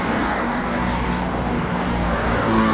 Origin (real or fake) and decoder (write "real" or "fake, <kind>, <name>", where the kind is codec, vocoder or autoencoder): fake, codec, DAC